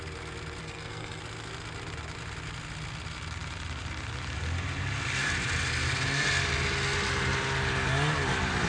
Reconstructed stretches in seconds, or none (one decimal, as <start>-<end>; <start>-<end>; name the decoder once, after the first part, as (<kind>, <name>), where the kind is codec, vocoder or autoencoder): 0.6-1.2 (codec, SNAC)